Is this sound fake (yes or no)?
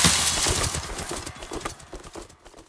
no